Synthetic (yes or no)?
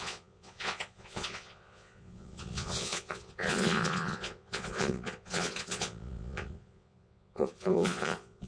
yes